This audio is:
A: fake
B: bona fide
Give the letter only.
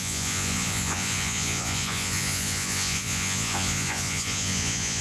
A